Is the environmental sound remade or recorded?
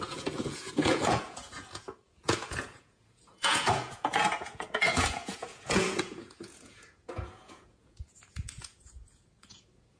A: remade